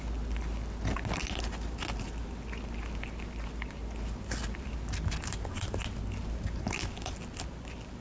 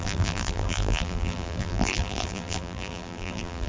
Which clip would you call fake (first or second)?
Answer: second